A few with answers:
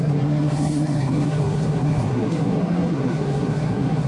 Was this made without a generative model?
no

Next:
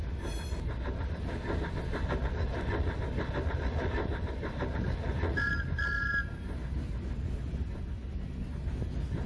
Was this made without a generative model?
yes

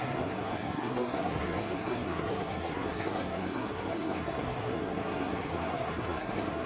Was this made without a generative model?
no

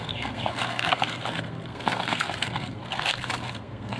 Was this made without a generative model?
no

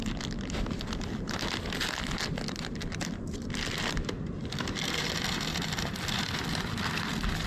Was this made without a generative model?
yes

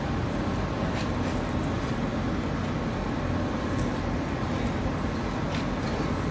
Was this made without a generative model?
yes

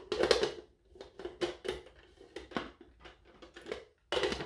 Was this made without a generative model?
yes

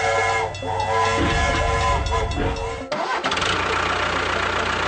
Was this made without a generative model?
yes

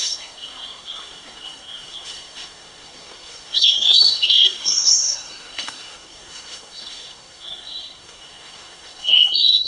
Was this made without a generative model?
no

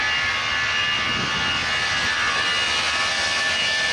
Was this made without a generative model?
yes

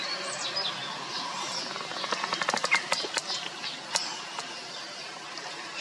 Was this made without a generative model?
yes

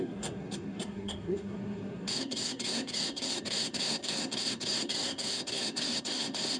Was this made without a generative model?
no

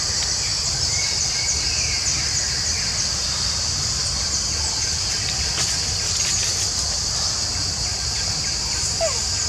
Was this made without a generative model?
yes